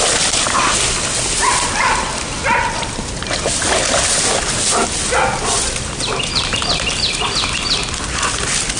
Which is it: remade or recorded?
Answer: recorded